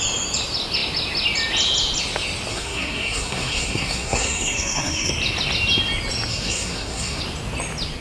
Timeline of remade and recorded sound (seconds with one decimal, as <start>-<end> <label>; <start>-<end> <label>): 0.0-2.5 recorded; 2.5-5.1 remade; 5.1-6.3 recorded; 6.3-7.2 remade; 7.2-8.0 recorded